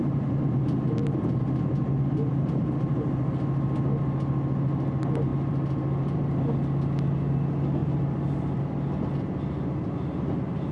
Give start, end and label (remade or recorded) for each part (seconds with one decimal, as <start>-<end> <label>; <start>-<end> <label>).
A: 0.0-1.0 recorded; 1.0-1.6 remade; 1.6-2.3 recorded; 2.3-3.3 remade; 3.3-5.3 recorded; 5.3-6.5 remade; 6.5-7.8 recorded; 7.8-8.6 remade; 8.6-10.7 recorded